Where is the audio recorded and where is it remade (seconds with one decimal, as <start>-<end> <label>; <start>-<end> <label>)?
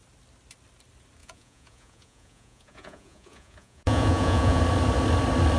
0.0-1.2 recorded; 1.2-4.6 remade; 4.6-5.6 recorded